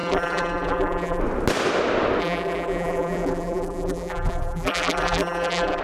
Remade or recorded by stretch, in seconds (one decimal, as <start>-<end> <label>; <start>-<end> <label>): 0.0-1.2 remade; 1.2-2.2 recorded; 2.2-5.8 remade